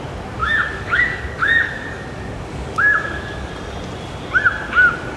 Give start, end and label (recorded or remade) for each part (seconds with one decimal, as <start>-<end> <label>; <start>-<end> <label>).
0.0-0.4 recorded; 0.4-3.5 remade; 3.5-5.2 recorded